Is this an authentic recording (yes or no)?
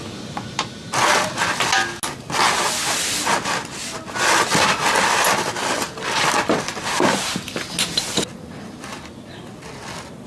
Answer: yes